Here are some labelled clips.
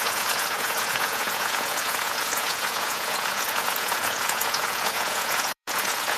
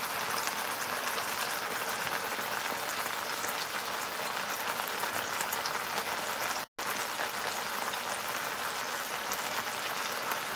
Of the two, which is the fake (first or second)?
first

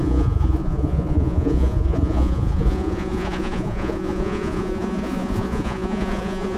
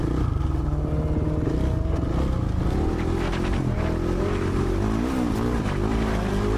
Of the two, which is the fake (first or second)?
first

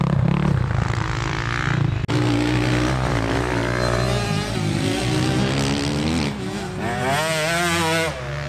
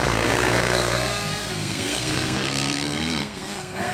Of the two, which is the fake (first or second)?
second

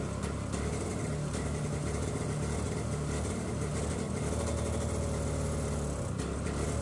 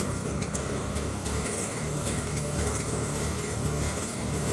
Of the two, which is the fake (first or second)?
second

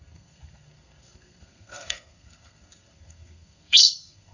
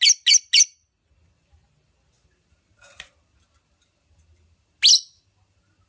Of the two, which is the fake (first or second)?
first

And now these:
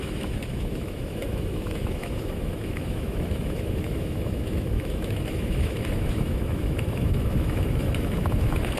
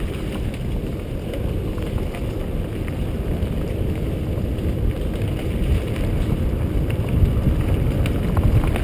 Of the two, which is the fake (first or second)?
first